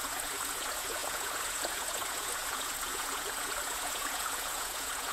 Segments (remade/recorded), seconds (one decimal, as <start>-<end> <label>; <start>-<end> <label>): 0.0-5.1 remade